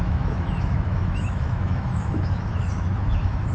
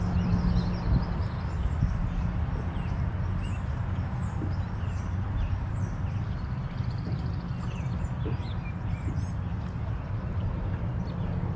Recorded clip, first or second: second